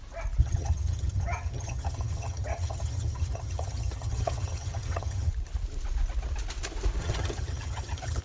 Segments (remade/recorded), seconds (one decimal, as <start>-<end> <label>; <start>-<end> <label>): 0.0-0.4 recorded; 0.4-5.3 remade; 5.3-7.0 recorded; 7.0-8.2 remade